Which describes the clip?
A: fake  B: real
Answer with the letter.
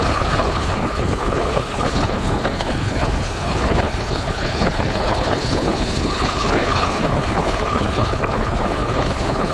A